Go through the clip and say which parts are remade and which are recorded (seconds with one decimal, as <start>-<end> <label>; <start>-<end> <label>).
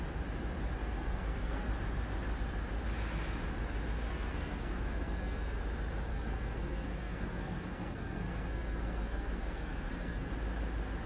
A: 0.0-0.8 recorded; 0.8-1.7 remade; 1.7-4.1 recorded; 4.1-5.6 remade; 5.6-6.1 recorded; 6.1-10.3 remade; 10.3-11.1 recorded